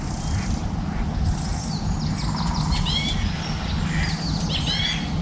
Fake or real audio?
real